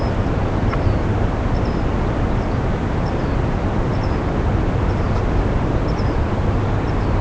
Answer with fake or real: real